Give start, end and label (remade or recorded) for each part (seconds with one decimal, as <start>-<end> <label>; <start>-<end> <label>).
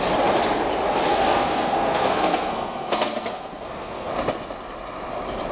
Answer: 0.0-1.1 recorded; 1.1-4.1 remade; 4.1-5.5 recorded